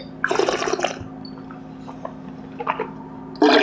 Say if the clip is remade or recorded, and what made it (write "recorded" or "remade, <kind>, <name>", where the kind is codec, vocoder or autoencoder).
recorded